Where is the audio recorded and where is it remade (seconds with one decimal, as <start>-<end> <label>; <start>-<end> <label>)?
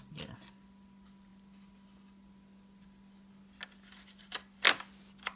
0.0-5.4 recorded